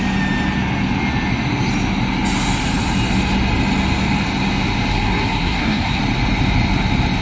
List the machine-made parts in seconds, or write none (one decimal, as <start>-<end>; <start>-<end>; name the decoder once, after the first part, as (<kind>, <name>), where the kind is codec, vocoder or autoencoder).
4.9-6.0 (codec, SNAC)